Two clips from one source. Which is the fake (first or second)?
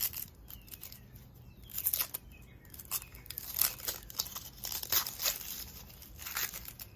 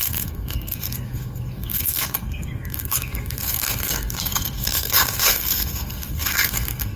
second